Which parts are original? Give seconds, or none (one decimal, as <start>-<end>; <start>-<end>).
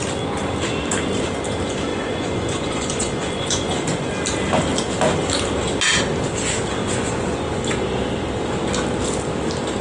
0.0-1.9; 4.1-6.8; 7.6-9.8